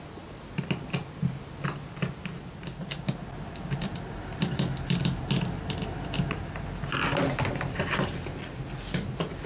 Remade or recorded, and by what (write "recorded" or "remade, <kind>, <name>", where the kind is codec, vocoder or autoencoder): recorded